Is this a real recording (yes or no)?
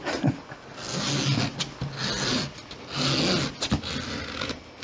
yes